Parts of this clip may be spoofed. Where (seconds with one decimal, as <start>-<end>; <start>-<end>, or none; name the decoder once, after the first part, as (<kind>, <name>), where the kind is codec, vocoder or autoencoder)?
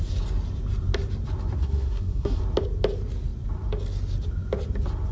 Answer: 1.6-2.4 (codec, SNAC)